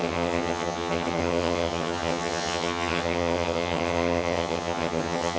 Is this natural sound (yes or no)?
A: no